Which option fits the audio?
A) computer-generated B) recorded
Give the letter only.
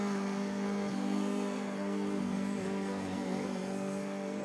A